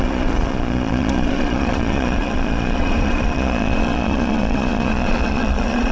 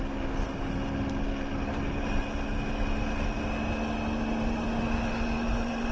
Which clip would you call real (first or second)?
second